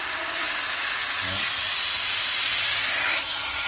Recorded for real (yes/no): no